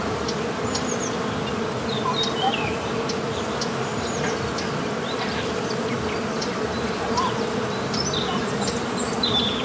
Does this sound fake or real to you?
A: real